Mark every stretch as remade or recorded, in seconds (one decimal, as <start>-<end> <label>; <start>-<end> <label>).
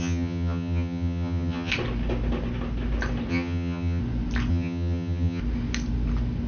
0.0-1.7 remade; 1.7-3.3 recorded; 3.3-4.0 remade; 4.0-4.5 recorded; 4.5-5.4 remade; 5.4-6.5 recorded